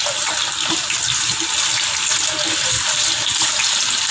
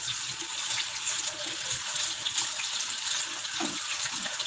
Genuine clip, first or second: first